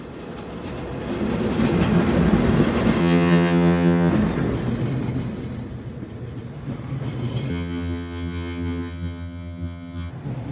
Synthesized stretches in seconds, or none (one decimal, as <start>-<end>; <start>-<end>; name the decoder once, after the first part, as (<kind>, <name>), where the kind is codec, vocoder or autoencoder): 3.0-4.1 (vocoder, HiFi-GAN); 7.5-10.1